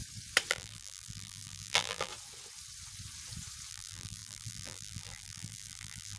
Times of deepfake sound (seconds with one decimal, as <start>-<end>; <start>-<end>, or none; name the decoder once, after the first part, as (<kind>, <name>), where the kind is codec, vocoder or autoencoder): 0.5-2.1 (vocoder, BigVGAN v2); 3.7-6.2